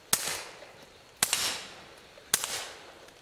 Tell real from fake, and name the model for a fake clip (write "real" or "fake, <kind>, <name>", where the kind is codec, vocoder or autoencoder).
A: real